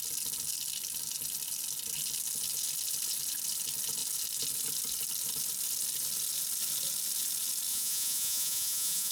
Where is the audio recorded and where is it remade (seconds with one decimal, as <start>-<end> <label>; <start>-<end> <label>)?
0.0-7.7 recorded; 7.7-9.1 remade